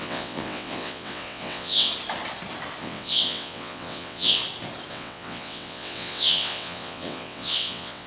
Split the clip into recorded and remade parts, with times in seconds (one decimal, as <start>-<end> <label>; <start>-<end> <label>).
0.0-1.9 remade; 1.9-2.8 recorded; 2.8-4.4 remade; 4.4-4.9 recorded; 4.9-8.1 remade